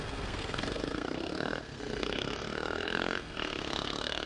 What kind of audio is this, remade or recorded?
remade